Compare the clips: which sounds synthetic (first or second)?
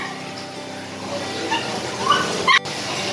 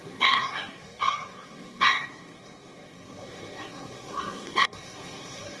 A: second